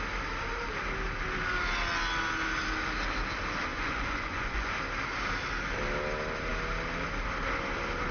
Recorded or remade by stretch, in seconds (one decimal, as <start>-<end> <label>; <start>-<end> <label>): 0.0-3.7 recorded; 3.7-4.7 remade; 4.7-8.1 recorded